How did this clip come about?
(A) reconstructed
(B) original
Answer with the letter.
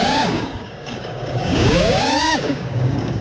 A